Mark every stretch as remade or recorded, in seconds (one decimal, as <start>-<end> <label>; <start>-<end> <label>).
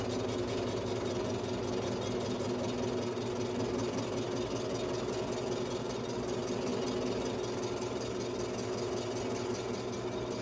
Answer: 0.0-10.4 recorded